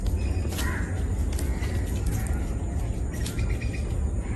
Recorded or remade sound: recorded